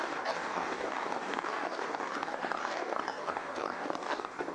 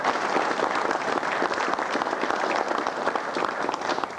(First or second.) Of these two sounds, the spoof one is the first